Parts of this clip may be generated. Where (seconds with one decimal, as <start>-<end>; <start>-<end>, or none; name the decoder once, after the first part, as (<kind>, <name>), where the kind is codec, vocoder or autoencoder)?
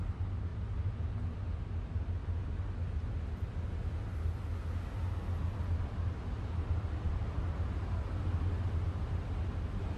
none